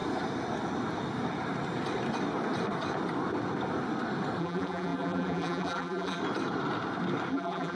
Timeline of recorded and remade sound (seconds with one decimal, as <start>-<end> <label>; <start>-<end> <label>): 0.0-4.4 recorded; 4.4-6.2 remade; 6.2-7.3 recorded; 7.3-7.8 remade